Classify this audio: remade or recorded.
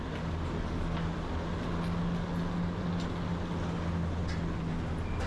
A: recorded